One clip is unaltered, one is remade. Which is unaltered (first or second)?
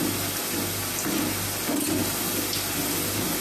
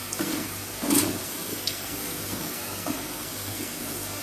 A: first